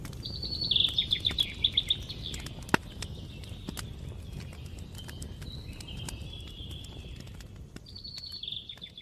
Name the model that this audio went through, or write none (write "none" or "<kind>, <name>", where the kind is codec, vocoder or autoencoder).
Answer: none